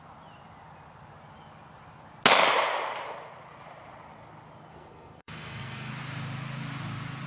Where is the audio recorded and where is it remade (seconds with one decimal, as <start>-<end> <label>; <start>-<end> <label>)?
0.0-4.7 recorded; 4.7-5.9 remade; 5.9-7.3 recorded